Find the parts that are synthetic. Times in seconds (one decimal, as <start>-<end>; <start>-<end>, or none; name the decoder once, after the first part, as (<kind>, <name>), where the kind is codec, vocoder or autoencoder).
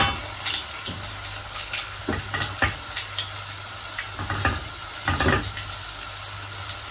1.4-2.0 (codec, HILCodec)